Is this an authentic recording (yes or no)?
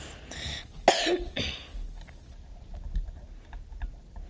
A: yes